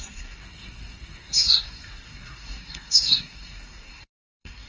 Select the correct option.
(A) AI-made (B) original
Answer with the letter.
A